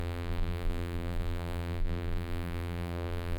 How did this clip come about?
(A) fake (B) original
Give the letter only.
A